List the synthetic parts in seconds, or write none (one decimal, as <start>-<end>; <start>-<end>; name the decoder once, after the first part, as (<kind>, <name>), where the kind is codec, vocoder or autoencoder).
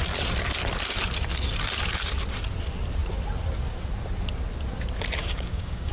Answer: 5.2-5.9 (codec, DAC)